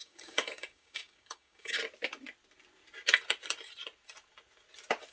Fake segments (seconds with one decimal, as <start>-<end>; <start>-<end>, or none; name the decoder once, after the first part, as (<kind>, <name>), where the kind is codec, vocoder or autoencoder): 0.0-1.8 (codec, DAC)

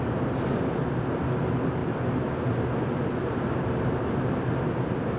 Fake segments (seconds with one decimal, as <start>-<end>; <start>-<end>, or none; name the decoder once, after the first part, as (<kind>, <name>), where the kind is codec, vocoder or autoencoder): none

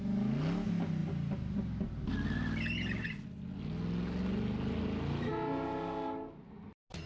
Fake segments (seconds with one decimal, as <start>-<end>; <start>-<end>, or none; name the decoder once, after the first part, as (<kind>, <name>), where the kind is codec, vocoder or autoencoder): none

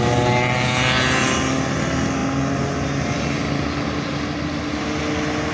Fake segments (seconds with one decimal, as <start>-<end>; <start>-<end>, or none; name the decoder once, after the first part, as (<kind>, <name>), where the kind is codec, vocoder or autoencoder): none

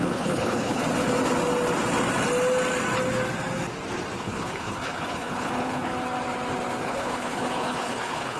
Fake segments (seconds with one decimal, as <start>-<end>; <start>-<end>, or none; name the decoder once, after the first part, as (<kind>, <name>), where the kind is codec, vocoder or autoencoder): 0.0-0.8 (codec, HILCodec); 4.2-5.9; 6.8-8.4

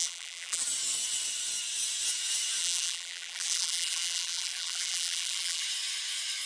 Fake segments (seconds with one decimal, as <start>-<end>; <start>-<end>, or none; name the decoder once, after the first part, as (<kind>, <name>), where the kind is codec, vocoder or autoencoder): 0.0-0.6 (vocoder, BigVGAN v2); 2.6-5.6